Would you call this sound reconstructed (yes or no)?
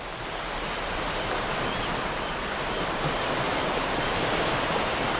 no